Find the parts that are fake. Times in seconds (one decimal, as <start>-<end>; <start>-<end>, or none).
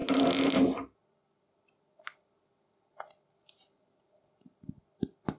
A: none